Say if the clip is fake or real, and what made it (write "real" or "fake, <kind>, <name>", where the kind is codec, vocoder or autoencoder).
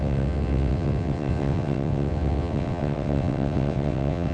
fake, vocoder, WaveNeXt